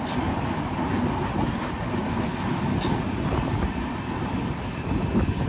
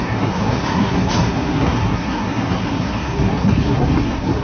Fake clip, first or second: second